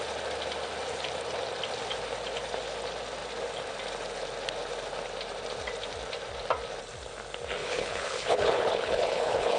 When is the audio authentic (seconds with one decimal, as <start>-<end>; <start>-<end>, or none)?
0.0-7.6